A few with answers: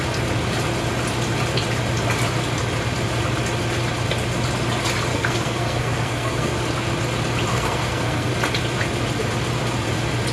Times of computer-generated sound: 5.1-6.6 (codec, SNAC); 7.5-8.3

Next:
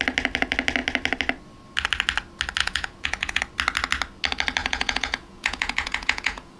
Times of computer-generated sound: 2.6-3.4 (vocoder, Vocos); 4.6-6.6

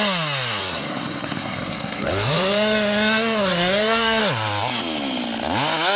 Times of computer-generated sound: 0.6-4.2 (codec, SNAC)

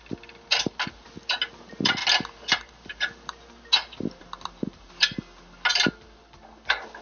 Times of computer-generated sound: none